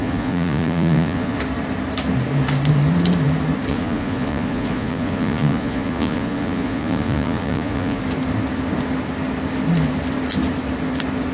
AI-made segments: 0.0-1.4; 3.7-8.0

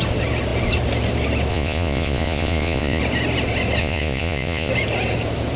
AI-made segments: 1.5-3.0; 3.8-4.7

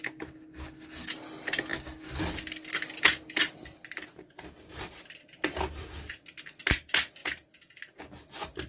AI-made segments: 7.2-7.8

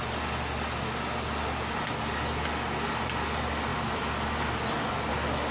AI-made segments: none